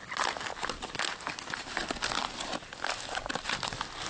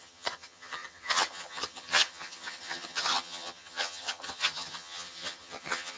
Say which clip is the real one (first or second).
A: first